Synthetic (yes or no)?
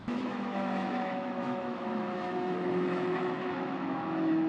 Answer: yes